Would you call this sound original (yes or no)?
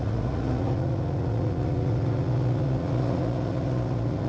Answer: no